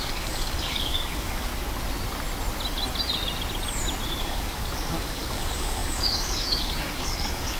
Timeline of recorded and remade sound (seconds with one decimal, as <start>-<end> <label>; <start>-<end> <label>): 0.0-1.5 remade; 1.5-4.2 recorded; 4.2-7.6 remade